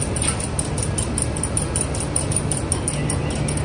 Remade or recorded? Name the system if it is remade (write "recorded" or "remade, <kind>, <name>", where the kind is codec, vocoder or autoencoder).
recorded